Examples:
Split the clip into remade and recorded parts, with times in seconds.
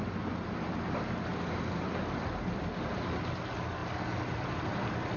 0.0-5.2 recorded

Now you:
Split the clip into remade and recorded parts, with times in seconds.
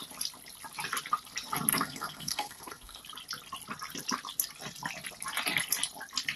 0.0-1.7 recorded; 1.7-3.0 remade; 3.0-6.4 recorded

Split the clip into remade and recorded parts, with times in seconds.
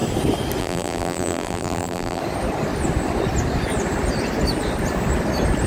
0.0-0.6 recorded; 0.6-2.2 remade; 2.2-5.7 recorded